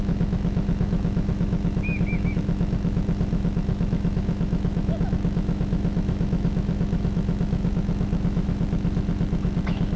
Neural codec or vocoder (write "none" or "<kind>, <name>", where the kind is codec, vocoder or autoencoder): autoencoder, DAC-VAE